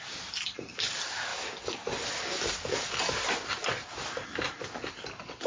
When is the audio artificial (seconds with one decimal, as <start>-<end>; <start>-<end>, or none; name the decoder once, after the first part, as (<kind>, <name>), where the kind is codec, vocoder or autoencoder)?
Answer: none